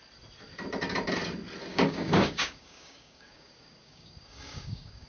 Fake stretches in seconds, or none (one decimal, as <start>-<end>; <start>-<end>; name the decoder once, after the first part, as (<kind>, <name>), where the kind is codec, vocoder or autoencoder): 1.7-5.1 (codec, DAC)

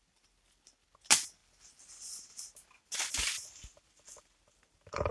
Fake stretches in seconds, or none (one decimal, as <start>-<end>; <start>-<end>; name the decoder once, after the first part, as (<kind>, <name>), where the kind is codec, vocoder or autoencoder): none

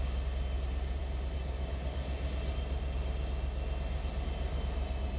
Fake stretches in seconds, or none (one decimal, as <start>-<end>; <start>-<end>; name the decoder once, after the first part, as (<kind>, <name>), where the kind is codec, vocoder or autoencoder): none

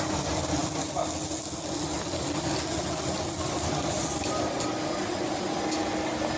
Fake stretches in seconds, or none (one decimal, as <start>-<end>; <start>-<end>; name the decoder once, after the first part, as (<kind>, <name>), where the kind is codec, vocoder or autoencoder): none

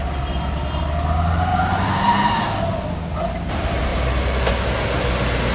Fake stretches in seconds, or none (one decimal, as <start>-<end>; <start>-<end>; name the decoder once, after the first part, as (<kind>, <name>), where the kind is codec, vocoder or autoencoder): 1.5-2.4 (vocoder, BigVGAN v2)

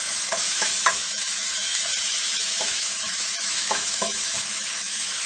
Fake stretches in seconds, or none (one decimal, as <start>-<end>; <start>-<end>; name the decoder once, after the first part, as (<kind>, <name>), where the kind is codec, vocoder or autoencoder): 0.0-5.3 (autoencoder, DAC-VAE)

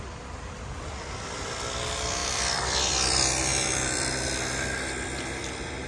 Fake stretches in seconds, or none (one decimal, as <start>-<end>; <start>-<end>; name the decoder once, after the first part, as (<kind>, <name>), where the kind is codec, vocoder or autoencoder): 2.2-2.8 (vocoder, BigVGAN v2); 3.5-4.1